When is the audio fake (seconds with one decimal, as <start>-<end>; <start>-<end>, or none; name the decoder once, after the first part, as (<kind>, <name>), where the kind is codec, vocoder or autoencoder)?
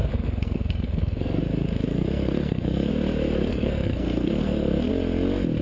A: 0.0-1.4 (codec, SNAC); 1.9-2.9; 3.5-4.9